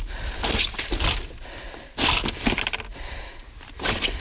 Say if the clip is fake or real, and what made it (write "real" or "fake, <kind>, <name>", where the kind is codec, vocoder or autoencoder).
real